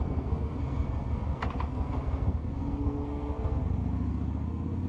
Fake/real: fake